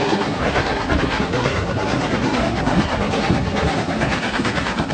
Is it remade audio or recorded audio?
remade